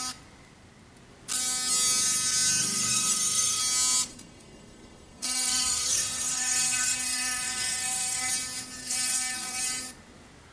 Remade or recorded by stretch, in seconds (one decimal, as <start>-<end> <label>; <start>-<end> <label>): 0.0-2.6 recorded; 2.6-3.6 remade; 3.6-4.1 recorded; 4.1-8.3 remade; 8.3-8.8 recorded; 8.8-9.6 remade; 9.6-10.5 recorded